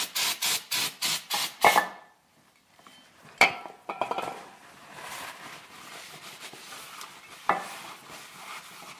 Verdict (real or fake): real